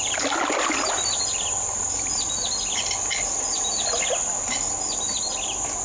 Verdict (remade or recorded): recorded